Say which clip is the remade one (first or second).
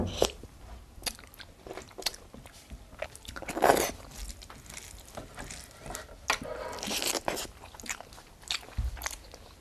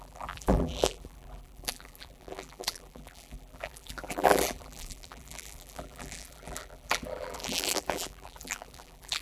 second